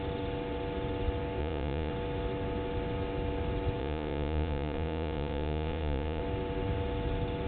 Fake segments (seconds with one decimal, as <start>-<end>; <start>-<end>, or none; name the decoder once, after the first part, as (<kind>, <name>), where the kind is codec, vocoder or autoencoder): 1.4-1.9 (vocoder, Vocos); 3.8-6.2